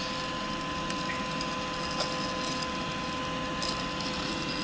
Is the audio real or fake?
real